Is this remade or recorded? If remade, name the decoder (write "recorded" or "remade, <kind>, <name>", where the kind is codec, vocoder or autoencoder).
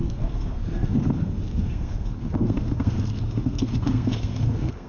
remade, codec, SNAC